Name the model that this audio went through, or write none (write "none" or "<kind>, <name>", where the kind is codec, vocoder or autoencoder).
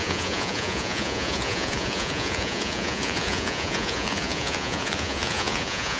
vocoder, Vocos